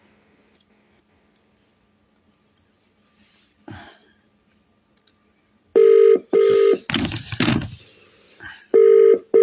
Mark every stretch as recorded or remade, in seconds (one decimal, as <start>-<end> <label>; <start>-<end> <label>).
0.0-9.4 recorded